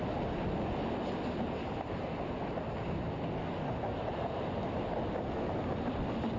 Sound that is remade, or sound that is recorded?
recorded